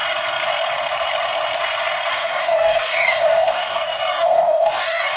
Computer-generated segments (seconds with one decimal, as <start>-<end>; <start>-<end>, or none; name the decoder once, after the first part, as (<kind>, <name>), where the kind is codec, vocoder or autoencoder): 2.1-5.2 (codec, DAC)

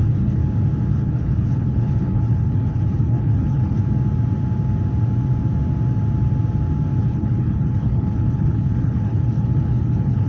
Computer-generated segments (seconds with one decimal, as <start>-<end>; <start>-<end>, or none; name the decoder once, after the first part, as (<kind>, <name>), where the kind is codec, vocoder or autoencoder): 0.0-0.4 (codec, HILCodec); 0.9-3.8; 7.0-10.3

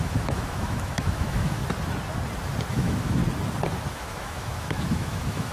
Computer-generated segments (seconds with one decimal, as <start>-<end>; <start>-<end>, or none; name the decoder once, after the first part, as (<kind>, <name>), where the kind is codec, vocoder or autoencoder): 0.0-1.6 (autoencoder, DAC-VAE); 2.7-3.2; 3.9-5.5

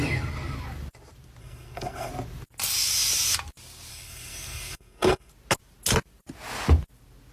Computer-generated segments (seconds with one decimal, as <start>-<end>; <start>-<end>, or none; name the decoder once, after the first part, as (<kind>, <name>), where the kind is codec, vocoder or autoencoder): 1.4-2.1 (codec, SNAC); 3.9-5.3

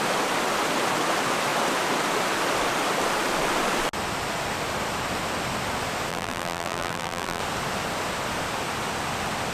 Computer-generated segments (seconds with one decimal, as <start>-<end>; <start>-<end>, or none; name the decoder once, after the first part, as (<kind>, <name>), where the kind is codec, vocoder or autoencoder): 6.1-7.4 (vocoder, BigVGAN v2)

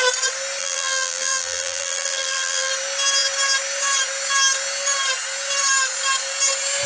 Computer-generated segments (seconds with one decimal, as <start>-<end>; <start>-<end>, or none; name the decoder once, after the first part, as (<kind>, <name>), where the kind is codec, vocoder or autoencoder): 0.6-2.7 (vocoder, BigVGAN v2)

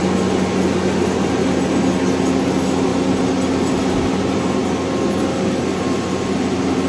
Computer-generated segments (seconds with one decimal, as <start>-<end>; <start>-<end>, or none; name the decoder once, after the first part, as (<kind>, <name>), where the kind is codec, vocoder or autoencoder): none

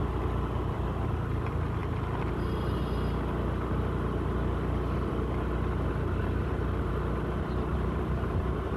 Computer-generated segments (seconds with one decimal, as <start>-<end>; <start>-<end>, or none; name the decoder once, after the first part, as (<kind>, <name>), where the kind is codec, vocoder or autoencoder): 7.7-8.8 (vocoder, BigVGAN v2)